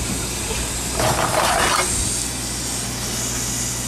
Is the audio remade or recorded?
recorded